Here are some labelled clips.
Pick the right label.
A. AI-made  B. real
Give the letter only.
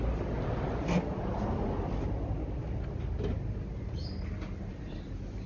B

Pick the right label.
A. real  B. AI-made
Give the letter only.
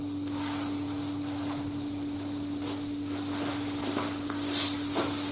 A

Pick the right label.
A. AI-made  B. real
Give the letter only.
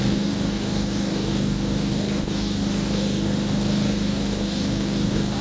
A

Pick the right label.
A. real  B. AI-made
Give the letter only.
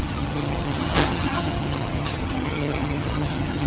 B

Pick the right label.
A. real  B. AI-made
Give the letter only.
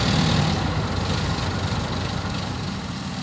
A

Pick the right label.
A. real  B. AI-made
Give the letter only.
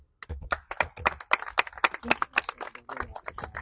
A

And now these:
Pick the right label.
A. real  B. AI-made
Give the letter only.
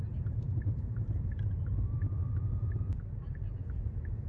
B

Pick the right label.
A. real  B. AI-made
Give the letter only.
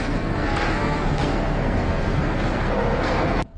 B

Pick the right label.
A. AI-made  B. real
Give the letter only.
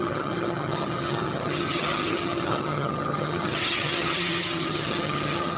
A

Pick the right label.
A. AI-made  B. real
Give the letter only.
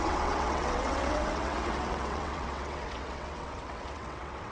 A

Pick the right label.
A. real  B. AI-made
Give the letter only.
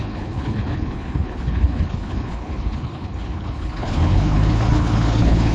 B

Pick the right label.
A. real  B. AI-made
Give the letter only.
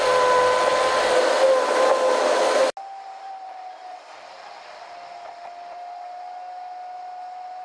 A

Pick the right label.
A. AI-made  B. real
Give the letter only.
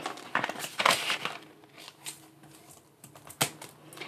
B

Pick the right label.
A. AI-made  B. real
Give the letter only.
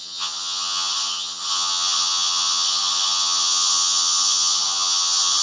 A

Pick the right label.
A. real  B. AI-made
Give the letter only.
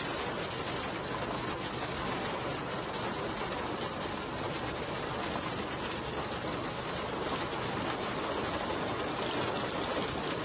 A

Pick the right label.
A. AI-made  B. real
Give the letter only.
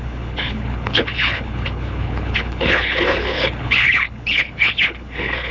A